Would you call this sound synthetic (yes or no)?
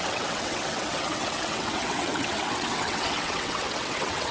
yes